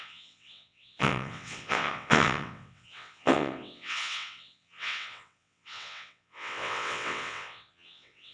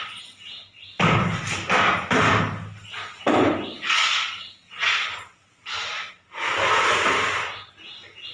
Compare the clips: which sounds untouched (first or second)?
second